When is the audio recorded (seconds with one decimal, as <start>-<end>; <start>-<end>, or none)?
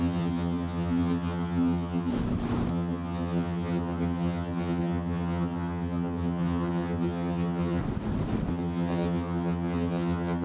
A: 2.1-2.7; 7.8-8.5